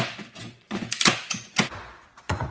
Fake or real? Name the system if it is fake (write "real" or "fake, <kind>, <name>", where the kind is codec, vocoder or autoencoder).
fake, vocoder, Vocos